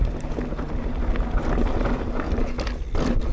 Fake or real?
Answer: real